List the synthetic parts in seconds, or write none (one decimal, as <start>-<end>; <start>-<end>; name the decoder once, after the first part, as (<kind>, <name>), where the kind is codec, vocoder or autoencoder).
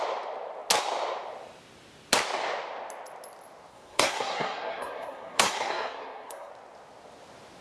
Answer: 3.7-6.5 (codec, SNAC)